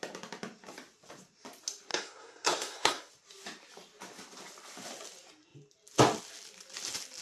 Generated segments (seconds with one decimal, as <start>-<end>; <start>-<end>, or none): 1.9-3.1